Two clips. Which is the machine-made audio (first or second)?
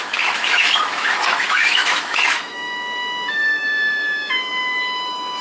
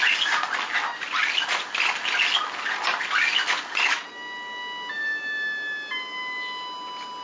first